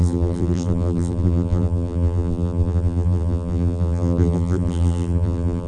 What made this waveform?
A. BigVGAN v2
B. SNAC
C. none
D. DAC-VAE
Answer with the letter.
A